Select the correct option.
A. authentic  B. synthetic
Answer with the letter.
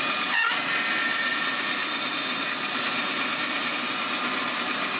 A